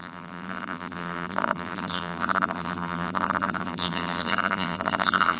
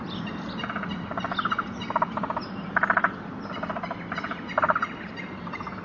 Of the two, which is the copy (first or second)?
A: first